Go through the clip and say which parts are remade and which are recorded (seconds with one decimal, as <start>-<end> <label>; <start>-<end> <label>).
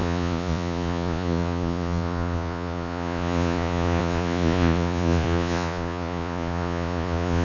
0.0-7.4 remade